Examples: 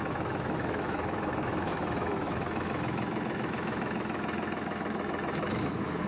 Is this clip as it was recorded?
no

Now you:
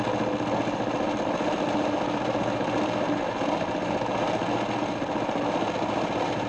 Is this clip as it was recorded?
yes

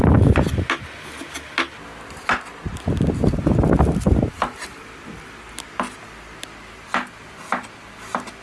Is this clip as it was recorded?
yes